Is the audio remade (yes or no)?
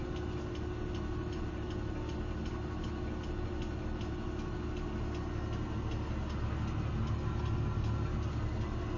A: no